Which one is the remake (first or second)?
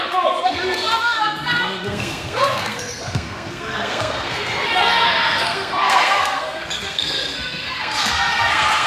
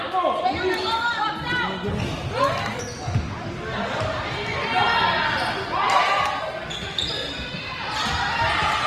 first